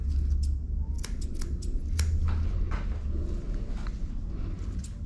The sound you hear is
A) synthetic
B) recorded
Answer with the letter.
B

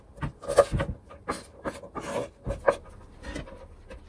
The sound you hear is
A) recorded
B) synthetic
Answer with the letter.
A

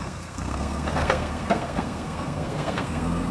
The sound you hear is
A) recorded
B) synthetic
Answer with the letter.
B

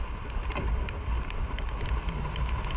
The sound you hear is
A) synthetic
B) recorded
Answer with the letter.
B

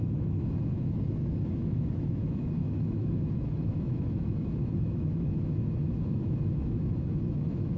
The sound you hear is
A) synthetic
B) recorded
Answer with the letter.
A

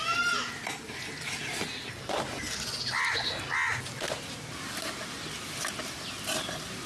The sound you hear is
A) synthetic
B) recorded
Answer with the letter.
B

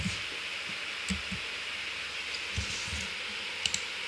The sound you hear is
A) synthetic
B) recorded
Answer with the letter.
B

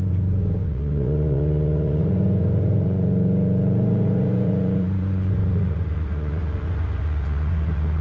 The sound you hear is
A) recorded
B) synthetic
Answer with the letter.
B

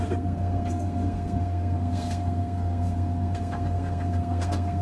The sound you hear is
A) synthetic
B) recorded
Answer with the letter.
A